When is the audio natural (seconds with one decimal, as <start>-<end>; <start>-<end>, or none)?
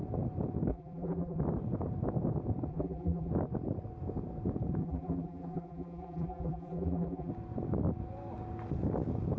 0.0-0.7; 1.4-2.7; 3.3-4.8; 7.3-9.4